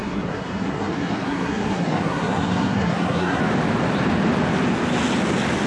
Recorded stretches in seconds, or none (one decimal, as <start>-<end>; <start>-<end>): 3.4-5.7